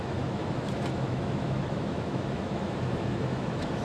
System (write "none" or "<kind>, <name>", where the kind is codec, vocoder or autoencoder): autoencoder, DAC-VAE